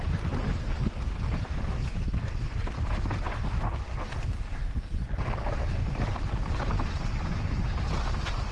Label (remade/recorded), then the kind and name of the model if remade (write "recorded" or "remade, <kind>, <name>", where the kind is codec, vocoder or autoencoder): recorded